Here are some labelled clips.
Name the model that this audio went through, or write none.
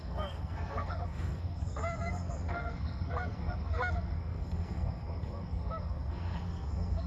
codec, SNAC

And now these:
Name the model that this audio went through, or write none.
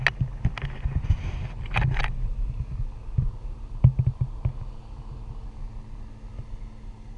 none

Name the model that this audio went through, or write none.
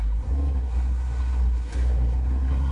codec, SNAC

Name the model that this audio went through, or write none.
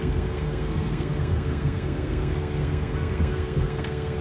codec, SNAC